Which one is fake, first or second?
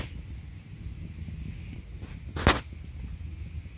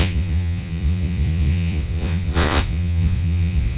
second